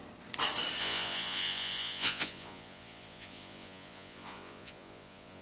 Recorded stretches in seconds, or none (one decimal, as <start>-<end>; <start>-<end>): 0.0-0.8